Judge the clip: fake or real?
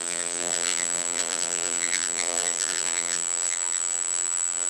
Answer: fake